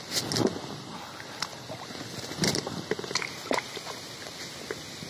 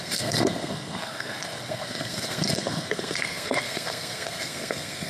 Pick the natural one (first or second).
first